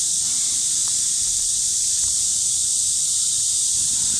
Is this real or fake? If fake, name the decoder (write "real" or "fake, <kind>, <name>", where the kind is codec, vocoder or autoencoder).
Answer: fake, vocoder, BigVGAN v2